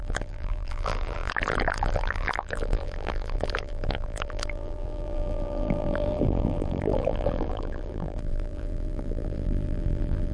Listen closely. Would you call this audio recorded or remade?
remade